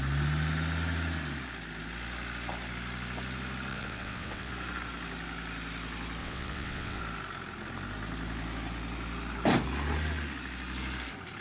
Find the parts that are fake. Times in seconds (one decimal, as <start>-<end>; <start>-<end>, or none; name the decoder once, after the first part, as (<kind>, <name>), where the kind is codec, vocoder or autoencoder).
3.7-4.5 (vocoder, WaveNeXt); 6.2-7.0